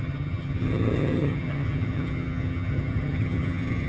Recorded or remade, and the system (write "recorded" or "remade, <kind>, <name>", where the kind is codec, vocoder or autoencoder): remade, vocoder, HiFi-GAN